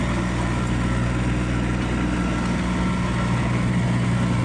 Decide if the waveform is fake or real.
real